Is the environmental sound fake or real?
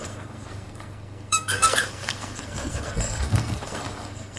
fake